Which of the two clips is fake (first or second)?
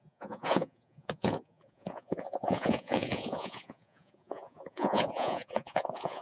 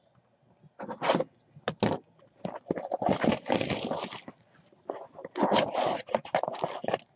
first